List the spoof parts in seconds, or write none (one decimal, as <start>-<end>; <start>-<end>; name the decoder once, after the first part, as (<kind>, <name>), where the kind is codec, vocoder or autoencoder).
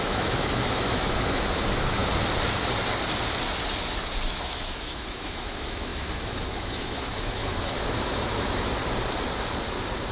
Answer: 0.0-2.0 (autoencoder, DAC-VAE); 4.3-8.8